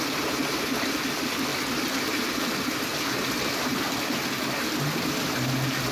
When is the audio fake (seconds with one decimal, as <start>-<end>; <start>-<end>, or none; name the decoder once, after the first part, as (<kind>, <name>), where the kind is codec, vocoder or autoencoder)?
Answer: none